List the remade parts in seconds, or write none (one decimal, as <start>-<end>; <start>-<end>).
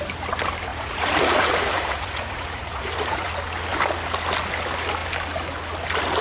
0.7-3.3